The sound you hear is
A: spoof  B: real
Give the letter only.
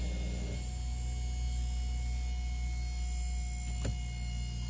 B